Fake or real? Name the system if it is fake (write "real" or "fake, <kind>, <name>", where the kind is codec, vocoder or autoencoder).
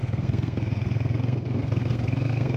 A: fake, codec, SNAC